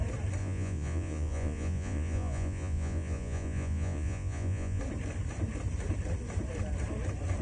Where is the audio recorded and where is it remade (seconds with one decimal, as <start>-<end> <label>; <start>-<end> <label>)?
0.0-0.4 recorded; 0.4-4.8 remade; 4.8-7.4 recorded